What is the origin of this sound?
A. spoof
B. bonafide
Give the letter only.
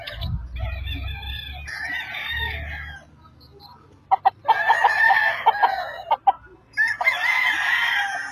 B